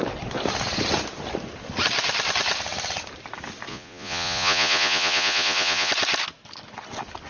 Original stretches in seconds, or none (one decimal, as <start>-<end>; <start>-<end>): 0.0-3.7; 5.9-7.3